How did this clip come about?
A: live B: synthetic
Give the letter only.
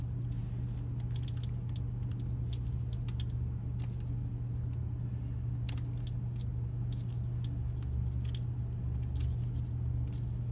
A